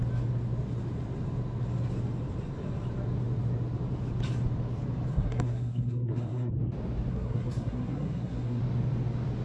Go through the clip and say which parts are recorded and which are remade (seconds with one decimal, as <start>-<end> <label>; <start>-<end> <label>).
0.0-5.1 recorded; 5.1-6.5 remade; 6.5-7.1 recorded; 7.1-8.6 remade; 8.6-9.4 recorded